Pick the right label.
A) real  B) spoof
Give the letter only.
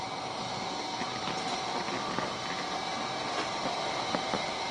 A